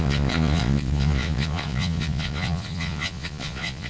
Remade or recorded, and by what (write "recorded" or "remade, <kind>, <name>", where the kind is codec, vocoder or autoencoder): remade, vocoder, Vocos